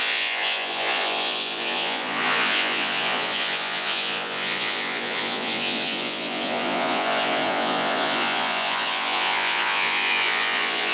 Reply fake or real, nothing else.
fake